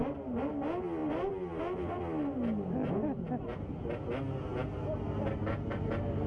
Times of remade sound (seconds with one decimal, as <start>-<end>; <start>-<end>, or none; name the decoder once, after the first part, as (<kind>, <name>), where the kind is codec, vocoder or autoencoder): none